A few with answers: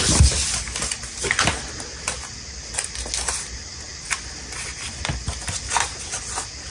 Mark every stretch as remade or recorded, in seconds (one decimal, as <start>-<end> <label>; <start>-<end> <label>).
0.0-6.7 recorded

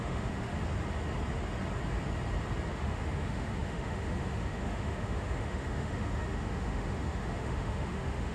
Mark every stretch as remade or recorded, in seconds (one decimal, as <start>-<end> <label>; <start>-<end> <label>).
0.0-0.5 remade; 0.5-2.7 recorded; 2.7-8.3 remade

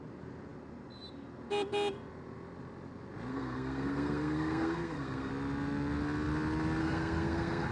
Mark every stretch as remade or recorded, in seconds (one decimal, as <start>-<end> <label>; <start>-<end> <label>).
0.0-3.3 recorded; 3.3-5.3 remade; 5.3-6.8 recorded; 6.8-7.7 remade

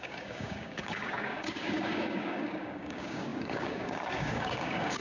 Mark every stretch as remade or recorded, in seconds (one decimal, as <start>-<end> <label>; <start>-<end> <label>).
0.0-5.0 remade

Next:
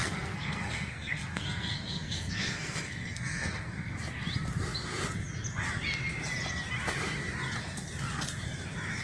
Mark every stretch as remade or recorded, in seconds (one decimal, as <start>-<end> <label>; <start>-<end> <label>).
0.0-4.0 remade; 4.0-9.0 recorded

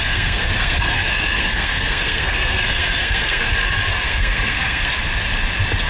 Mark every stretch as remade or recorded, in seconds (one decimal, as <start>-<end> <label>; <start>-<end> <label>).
0.0-3.5 remade; 3.5-3.9 recorded; 3.9-4.9 remade; 4.9-5.9 recorded

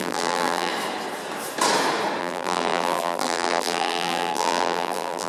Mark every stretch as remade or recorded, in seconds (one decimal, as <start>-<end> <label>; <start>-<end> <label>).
0.0-0.7 remade; 0.7-2.2 recorded; 2.2-5.3 remade